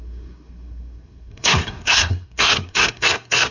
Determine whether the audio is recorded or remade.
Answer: remade